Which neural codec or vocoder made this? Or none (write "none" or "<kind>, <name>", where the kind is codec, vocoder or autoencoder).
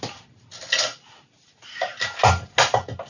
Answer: none